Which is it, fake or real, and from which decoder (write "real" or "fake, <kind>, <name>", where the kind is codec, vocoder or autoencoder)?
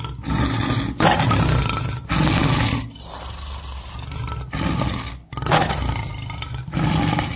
real